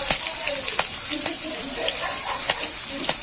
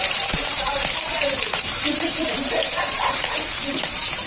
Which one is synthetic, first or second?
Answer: second